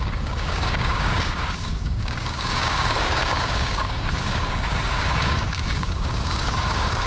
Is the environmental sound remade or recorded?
remade